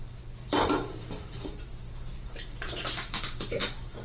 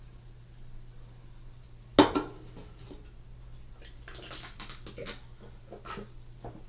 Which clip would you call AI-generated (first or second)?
first